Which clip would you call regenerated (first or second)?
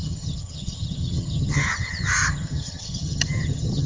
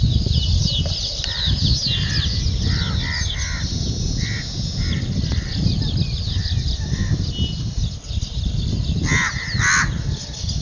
first